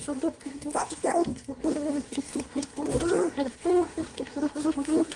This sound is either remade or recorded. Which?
remade